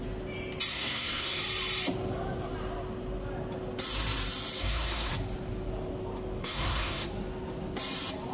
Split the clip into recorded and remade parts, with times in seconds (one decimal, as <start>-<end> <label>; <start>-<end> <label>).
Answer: 0.0-0.7 recorded; 0.7-1.4 remade; 1.4-4.6 recorded; 4.6-5.1 remade; 5.1-6.4 recorded; 6.4-7.1 remade; 7.1-8.3 recorded